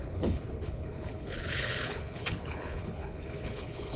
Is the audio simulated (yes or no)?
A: yes